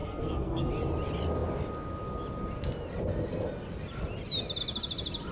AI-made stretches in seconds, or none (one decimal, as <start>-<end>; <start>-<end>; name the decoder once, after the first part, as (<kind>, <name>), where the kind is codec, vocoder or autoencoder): 0.0-0.7 (codec, SNAC)